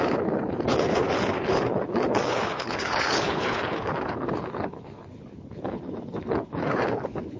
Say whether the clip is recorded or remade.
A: remade